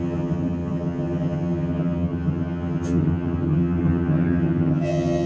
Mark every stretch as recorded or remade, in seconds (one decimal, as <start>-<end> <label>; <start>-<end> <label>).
0.0-5.3 remade